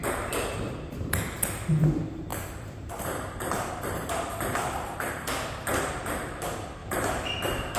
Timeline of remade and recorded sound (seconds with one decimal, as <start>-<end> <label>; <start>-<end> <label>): 0.0-0.5 remade; 0.5-2.3 recorded; 2.3-5.1 remade; 5.1-6.8 recorded; 6.8-7.8 remade